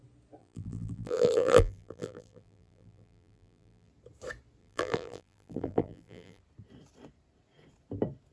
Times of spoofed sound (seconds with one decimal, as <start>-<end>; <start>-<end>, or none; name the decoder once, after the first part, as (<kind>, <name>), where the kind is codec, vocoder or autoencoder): 0.4-3.9 (vocoder, BigVGAN v2); 4.6-6.4